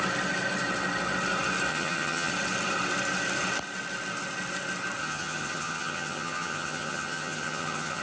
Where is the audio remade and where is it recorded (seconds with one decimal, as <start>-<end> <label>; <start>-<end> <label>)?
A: 0.0-1.7 recorded; 1.7-2.3 remade; 2.3-5.0 recorded; 5.0-8.0 remade